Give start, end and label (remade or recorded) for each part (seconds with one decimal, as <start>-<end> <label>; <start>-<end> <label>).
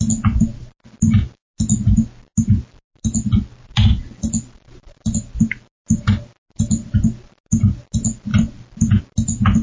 0.0-9.6 recorded